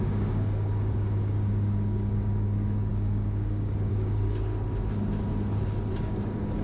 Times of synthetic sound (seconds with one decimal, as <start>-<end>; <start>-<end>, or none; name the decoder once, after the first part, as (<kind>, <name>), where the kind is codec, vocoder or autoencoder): 0.0-4.5 (codec, DAC); 6.0-6.6